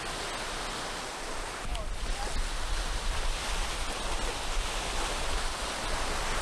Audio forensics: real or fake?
real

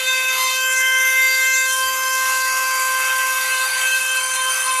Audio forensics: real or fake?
fake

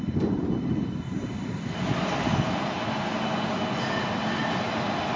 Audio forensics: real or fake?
real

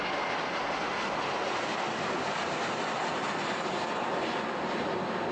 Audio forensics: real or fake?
real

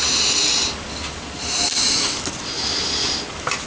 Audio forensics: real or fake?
real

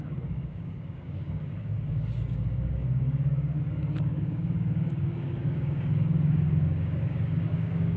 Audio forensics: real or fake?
fake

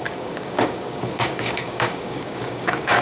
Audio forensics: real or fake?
fake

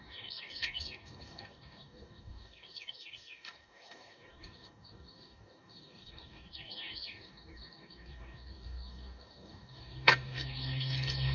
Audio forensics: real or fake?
fake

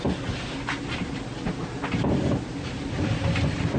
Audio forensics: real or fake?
real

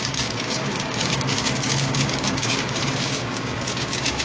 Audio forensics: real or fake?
fake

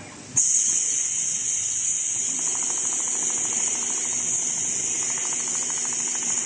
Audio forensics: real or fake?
real